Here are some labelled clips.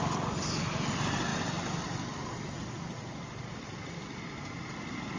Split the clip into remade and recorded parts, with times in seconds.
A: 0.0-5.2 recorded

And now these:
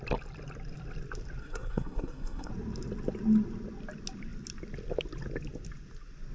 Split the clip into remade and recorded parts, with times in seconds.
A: 0.0-1.4 recorded; 1.4-2.5 remade; 2.5-6.3 recorded